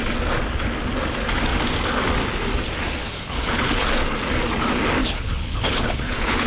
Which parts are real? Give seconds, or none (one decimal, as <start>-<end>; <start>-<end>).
0.0-3.0; 3.9-5.0